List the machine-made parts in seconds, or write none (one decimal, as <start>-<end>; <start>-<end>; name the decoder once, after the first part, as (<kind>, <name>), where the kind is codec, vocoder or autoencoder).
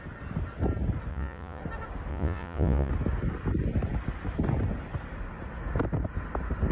1.1-1.6 (vocoder, Vocos); 2.1-2.9